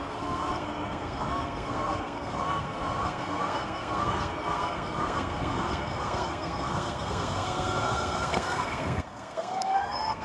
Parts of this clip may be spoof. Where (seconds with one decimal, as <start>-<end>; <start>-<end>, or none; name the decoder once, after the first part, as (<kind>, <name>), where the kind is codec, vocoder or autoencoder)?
0.0-10.2 (codec, SNAC)